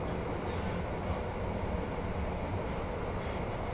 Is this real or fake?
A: real